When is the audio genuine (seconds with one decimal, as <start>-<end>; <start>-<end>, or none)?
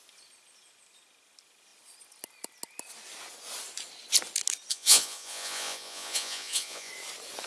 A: 0.0-4.7; 6.9-7.5